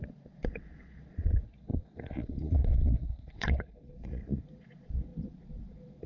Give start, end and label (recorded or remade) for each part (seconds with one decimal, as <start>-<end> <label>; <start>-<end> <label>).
0.0-6.1 remade